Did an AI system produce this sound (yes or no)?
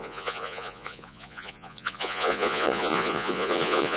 yes